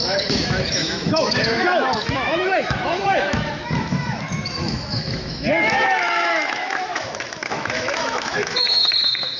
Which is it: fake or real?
fake